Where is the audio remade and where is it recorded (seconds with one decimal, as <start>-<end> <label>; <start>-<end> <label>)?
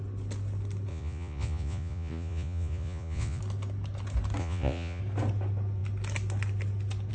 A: 0.0-0.9 recorded; 0.9-3.4 remade; 3.4-4.4 recorded; 4.4-5.0 remade; 5.0-7.1 recorded